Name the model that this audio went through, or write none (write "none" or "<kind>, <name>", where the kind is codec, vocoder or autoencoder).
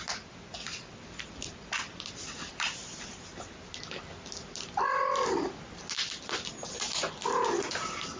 none